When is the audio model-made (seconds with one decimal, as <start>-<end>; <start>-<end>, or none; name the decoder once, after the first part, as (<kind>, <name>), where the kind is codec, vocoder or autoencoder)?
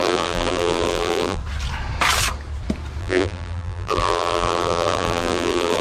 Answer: 0.0-1.4 (vocoder, BigVGAN v2); 3.0-5.8